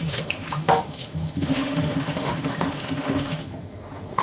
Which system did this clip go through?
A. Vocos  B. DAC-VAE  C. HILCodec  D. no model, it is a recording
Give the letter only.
B